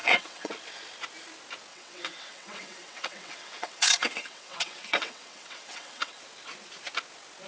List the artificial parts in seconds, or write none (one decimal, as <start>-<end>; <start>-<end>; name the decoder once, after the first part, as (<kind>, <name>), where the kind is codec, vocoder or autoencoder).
0.0-0.5 (vocoder, WaveNeXt); 1.7-6.2